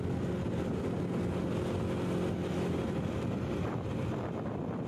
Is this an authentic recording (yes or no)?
yes